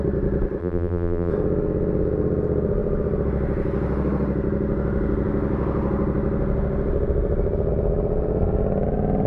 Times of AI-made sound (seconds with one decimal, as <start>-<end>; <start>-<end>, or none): 0.6-1.3